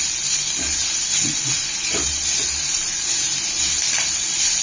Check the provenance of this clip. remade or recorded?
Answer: recorded